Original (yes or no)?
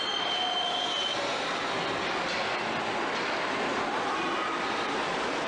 yes